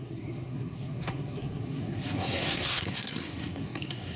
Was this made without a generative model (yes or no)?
no